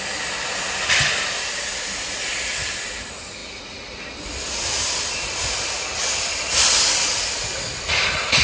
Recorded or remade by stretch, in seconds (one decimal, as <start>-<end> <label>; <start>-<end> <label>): 0.0-8.4 recorded